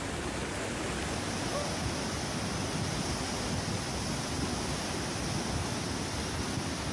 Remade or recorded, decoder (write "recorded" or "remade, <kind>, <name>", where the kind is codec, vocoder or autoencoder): recorded